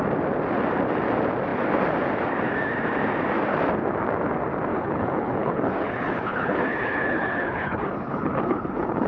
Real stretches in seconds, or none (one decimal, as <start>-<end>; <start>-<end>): 0.0-4.7